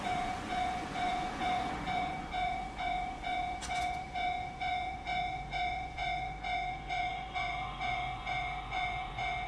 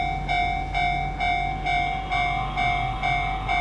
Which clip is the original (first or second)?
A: second